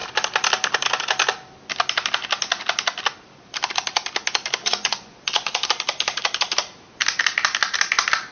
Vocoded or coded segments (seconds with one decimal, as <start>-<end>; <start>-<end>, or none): 4.6-5.7